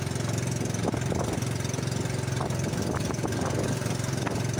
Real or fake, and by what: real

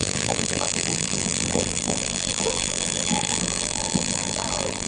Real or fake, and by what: fake, vocoder, BigVGAN v2